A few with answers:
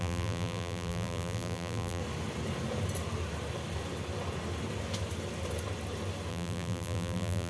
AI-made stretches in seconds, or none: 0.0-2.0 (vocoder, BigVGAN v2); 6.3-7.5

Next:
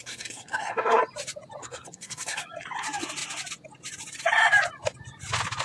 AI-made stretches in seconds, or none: 0.0-1.0 (codec, SNAC); 1.6-2.4

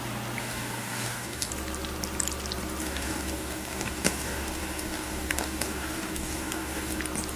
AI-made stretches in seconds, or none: 0.4-1.5 (codec, DAC); 2.8-7.0

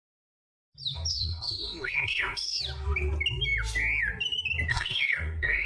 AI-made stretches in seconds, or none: 1.1-2.6 (codec, SNAC); 4.7-5.7